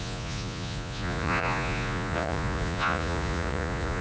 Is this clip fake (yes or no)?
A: yes